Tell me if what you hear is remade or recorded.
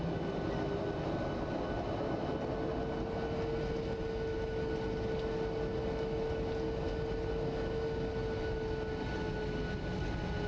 recorded